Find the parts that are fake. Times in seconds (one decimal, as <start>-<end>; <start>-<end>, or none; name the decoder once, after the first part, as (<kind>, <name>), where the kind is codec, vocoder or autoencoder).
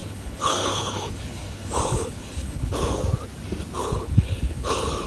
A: 0.0-3.0 (codec, HILCodec); 3.8-5.1